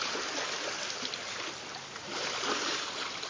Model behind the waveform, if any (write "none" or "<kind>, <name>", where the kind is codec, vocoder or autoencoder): none